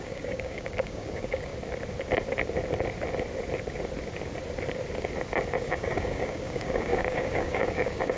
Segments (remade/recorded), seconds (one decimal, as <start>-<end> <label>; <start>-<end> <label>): 0.0-1.5 remade; 1.5-5.6 recorded; 5.6-8.2 remade